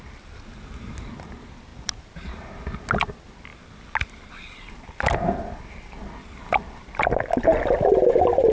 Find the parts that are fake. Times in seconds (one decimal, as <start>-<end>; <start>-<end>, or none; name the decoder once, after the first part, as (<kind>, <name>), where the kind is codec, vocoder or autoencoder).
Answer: none